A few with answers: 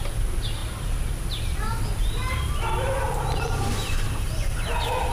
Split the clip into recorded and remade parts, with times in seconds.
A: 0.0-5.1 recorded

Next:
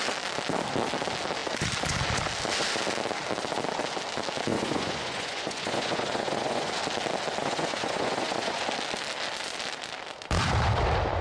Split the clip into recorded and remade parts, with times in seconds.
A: 0.0-4.5 recorded; 4.5-6.7 remade; 6.7-7.4 recorded; 7.4-8.6 remade; 8.6-11.2 recorded

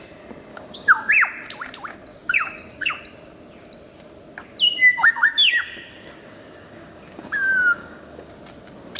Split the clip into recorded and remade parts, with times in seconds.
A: 0.0-0.5 recorded; 0.5-1.1 remade; 1.1-2.1 recorded; 2.1-2.9 remade; 2.9-4.8 recorded; 4.8-8.3 remade; 8.3-9.0 recorded